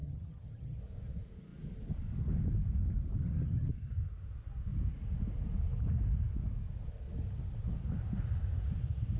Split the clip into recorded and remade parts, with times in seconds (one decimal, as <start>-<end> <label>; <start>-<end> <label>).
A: 0.0-0.8 remade; 0.8-3.2 recorded; 3.2-3.7 remade; 3.7-9.2 recorded